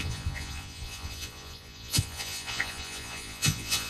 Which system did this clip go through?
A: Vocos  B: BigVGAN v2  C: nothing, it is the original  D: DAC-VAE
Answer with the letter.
A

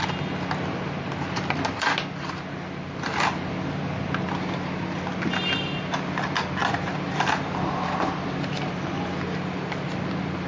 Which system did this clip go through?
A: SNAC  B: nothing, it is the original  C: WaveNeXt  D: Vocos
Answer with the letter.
B